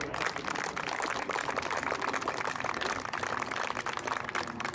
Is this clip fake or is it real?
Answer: real